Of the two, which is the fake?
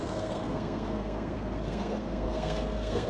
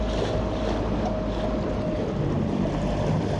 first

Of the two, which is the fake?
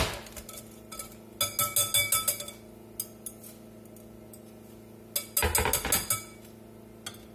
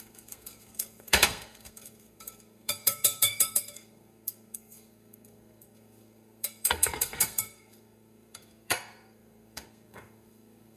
second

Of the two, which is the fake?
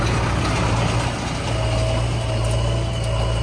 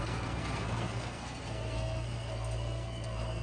second